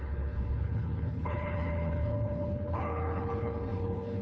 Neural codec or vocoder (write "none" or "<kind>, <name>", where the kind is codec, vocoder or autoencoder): codec, HILCodec